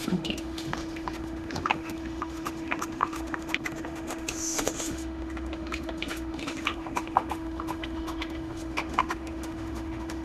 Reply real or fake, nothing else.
fake